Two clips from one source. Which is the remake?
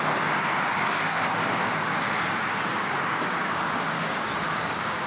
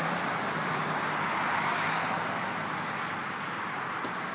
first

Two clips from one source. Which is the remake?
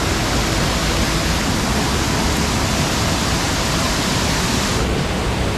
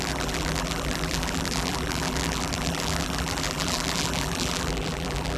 second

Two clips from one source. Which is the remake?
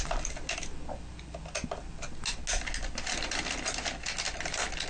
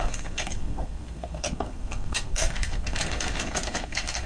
second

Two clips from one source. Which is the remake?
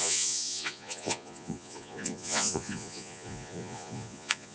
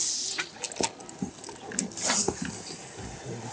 first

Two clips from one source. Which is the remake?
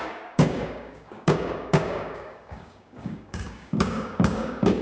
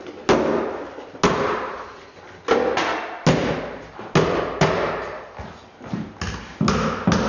first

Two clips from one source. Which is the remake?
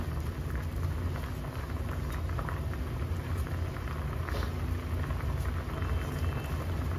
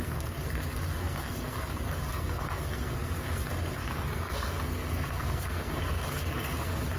second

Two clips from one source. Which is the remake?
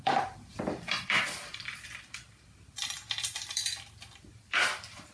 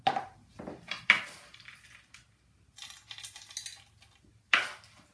first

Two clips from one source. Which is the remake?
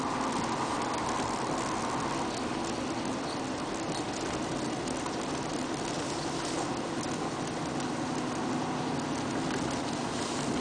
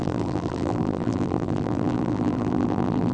second